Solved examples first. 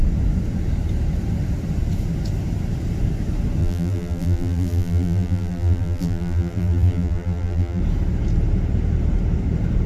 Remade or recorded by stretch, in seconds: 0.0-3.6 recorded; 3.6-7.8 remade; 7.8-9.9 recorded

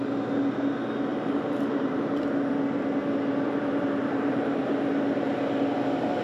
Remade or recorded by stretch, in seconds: 0.0-1.1 recorded; 1.1-2.3 remade; 2.3-4.0 recorded; 4.0-4.7 remade; 4.7-6.2 recorded

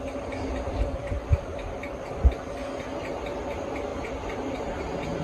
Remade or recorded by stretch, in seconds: 0.0-5.2 recorded

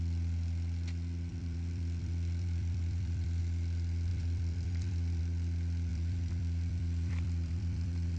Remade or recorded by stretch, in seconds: 0.0-1.3 recorded; 1.3-3.4 remade; 3.4-4.1 recorded; 4.1-5.2 remade; 5.2-5.9 recorded; 5.9-8.2 remade